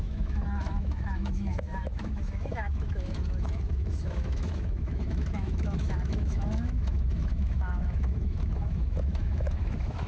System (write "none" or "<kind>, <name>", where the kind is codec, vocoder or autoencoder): autoencoder, DAC-VAE